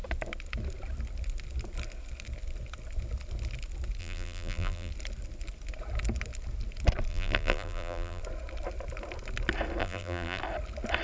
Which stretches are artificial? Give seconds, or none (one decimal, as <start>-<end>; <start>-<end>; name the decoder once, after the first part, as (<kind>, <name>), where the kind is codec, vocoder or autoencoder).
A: 4.0-4.9 (vocoder, BigVGAN v2); 7.1-8.2; 9.8-10.4